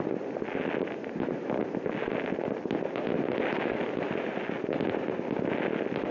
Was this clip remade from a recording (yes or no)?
no